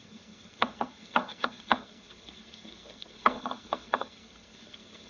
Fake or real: fake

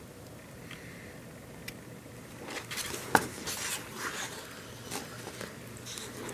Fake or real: real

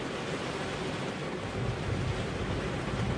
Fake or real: real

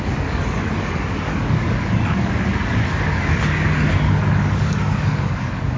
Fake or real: fake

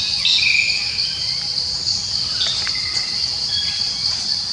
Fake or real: real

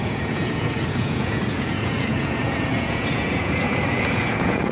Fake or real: fake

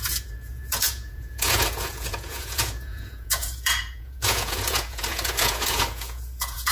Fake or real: fake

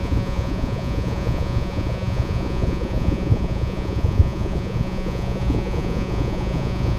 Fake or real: fake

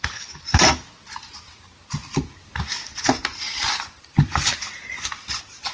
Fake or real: real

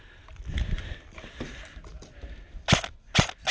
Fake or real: real